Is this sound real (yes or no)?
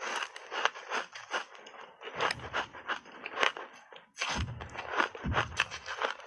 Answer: yes